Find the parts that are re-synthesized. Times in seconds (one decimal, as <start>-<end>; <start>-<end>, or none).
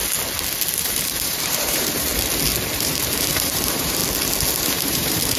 0.8-2.1; 2.7-4.0; 4.6-5.4